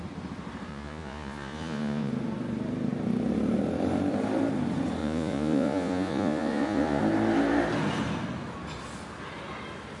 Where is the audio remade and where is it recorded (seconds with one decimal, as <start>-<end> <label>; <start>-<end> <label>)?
0.0-0.7 recorded; 0.7-2.1 remade; 2.1-5.0 recorded; 5.0-7.0 remade; 7.0-10.0 recorded

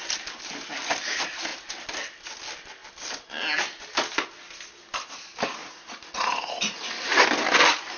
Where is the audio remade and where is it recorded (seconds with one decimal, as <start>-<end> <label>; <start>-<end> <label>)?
0.0-5.6 recorded; 5.6-6.5 remade; 6.5-8.0 recorded

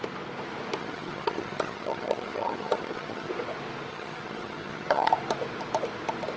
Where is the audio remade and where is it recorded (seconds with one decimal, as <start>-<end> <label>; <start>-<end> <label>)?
0.0-0.8 recorded; 0.8-3.3 remade; 3.3-3.9 recorded; 3.9-5.1 remade; 5.1-6.4 recorded

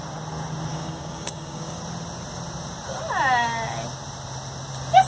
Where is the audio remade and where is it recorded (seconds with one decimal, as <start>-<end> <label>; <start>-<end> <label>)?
0.0-0.7 recorded; 0.7-1.8 remade; 1.8-5.1 recorded

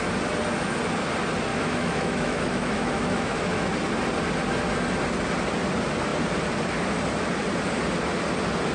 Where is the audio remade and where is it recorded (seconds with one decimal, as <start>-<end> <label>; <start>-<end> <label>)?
0.0-1.5 recorded; 1.5-3.7 remade; 3.7-8.7 recorded